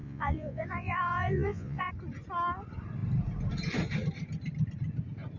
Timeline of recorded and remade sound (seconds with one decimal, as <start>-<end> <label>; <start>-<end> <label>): 0.0-1.9 remade; 1.9-5.4 recorded